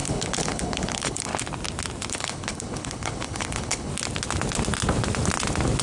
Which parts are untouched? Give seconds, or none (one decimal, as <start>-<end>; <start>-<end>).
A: 1.3-2.1; 3.9-5.8